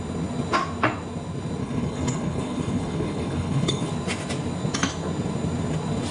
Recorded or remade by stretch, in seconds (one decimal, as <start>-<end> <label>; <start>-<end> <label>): 0.0-1.6 recorded; 1.6-3.9 remade; 3.9-6.1 recorded